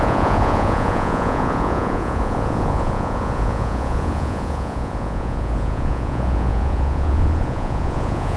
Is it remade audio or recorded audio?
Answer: remade